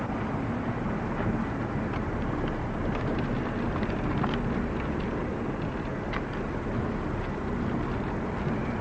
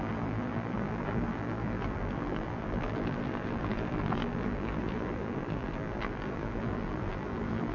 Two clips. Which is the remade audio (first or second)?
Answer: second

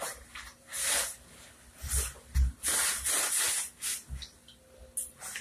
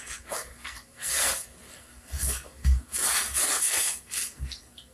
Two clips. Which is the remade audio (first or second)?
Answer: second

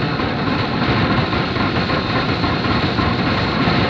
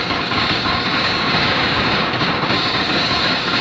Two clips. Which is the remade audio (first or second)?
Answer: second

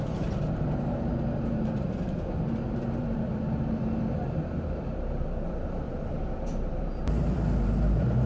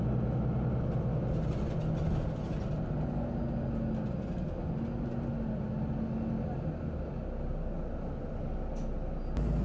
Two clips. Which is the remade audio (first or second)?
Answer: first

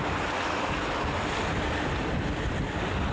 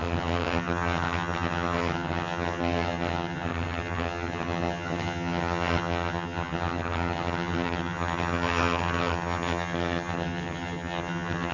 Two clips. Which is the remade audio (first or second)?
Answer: second